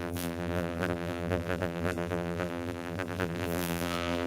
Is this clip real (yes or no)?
no